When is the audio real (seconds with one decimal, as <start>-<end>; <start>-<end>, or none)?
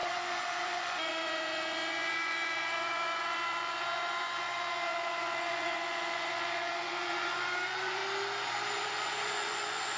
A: 8.0-8.7